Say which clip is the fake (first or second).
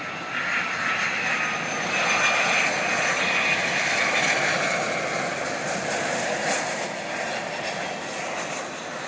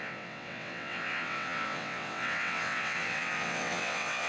second